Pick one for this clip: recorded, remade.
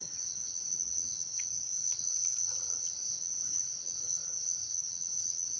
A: remade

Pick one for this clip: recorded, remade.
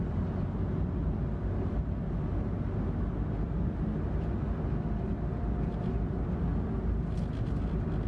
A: recorded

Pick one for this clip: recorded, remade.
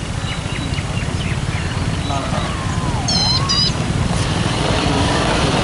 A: remade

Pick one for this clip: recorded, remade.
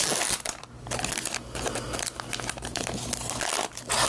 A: recorded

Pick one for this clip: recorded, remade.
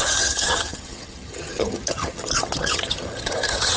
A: remade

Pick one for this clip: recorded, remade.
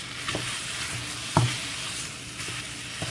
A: recorded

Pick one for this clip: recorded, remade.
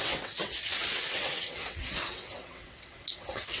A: remade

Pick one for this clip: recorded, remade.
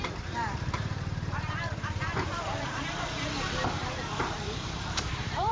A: remade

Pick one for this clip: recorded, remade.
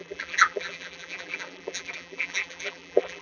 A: remade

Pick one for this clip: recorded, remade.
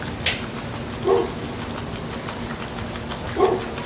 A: recorded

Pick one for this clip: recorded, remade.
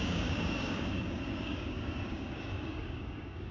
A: remade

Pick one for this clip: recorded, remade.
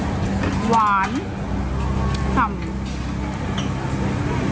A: recorded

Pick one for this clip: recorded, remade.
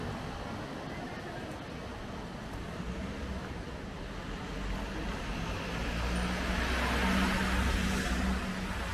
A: recorded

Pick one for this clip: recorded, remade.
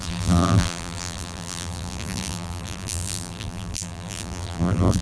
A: remade